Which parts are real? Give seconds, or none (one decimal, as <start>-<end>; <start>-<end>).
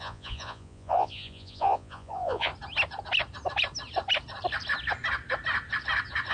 2.5-6.3